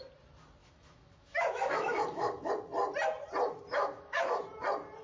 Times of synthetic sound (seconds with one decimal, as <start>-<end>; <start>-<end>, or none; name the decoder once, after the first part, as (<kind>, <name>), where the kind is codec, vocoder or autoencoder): 0.6-2.5 (autoencoder, DAC-VAE); 3.7-4.4